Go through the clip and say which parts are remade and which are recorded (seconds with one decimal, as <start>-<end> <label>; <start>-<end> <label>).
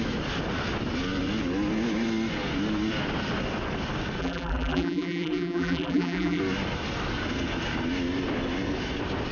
0.0-4.2 recorded; 4.2-6.4 remade; 6.4-9.3 recorded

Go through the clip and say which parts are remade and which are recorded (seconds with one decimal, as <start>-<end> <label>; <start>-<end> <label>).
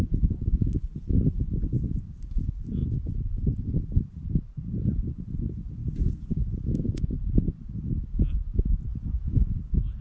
0.0-2.8 recorded; 2.8-3.9 remade; 3.9-5.8 recorded; 5.8-7.0 remade; 7.0-8.9 recorded; 8.9-9.5 remade; 9.5-10.0 recorded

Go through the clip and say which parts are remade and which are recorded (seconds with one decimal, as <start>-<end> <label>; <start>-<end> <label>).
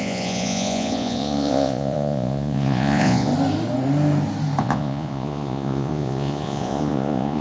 0.0-3.3 remade; 3.3-4.6 recorded; 4.6-7.4 remade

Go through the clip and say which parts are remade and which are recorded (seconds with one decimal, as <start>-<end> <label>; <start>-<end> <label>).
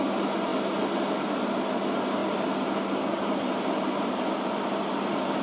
0.0-5.4 recorded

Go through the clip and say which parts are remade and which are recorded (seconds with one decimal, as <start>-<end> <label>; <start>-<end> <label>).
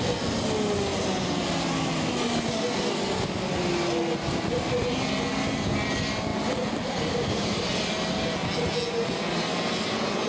0.0-6.3 recorded; 6.3-7.7 remade; 7.7-10.3 recorded